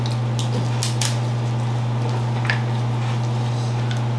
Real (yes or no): yes